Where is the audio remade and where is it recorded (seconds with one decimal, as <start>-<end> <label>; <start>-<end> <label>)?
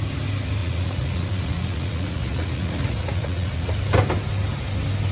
0.0-0.6 recorded; 0.6-3.7 remade; 3.7-5.1 recorded